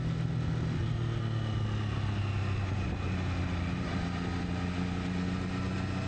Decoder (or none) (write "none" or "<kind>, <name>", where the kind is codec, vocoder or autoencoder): none